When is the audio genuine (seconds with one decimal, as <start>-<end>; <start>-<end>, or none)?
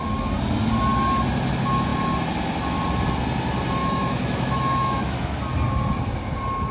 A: 0.0-3.8; 5.4-6.7